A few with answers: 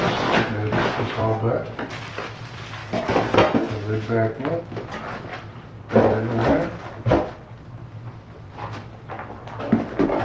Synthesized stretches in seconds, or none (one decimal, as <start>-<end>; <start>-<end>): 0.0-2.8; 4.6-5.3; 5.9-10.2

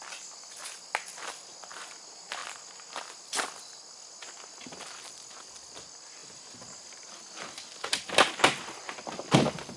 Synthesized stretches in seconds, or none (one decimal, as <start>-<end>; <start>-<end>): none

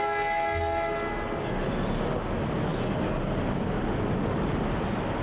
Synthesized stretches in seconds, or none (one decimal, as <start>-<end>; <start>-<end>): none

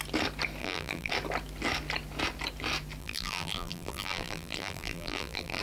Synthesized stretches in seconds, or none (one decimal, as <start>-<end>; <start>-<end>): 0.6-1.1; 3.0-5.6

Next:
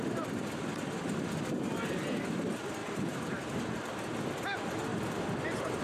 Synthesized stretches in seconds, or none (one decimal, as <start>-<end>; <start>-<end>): 2.8-3.6

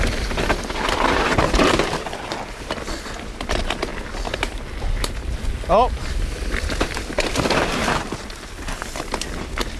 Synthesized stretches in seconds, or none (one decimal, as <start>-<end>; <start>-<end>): 1.4-2.1